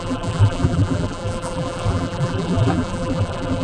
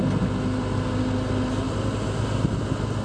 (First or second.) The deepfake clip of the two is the first